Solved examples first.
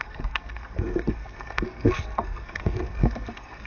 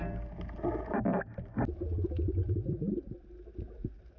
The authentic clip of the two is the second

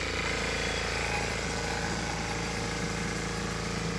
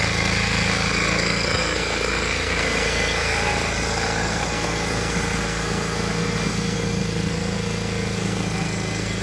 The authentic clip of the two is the first